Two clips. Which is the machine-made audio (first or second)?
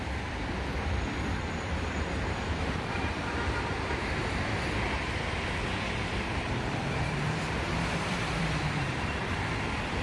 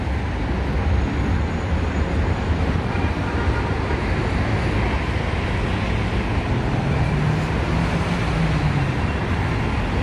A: first